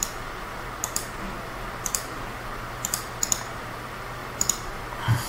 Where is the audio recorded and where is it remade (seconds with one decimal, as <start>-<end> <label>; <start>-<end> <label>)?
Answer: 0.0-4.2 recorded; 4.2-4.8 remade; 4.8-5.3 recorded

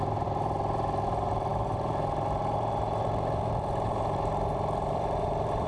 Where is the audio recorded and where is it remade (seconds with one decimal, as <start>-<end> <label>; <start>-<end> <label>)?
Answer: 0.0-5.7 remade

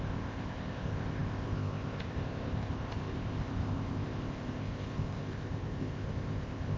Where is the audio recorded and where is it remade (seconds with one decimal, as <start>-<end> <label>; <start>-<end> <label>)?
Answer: 0.0-6.8 remade

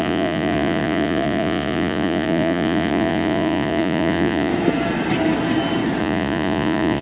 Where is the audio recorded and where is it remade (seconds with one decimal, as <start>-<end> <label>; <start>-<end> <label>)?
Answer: 0.0-4.5 remade; 4.5-6.0 recorded; 6.0-7.0 remade